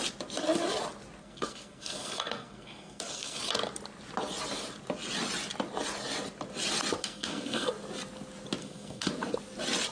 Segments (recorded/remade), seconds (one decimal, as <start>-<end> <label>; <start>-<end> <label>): 0.0-1.2 recorded; 1.2-3.4 remade; 3.4-7.0 recorded; 7.0-7.7 remade; 7.7-8.6 recorded; 8.6-9.1 remade; 9.1-9.9 recorded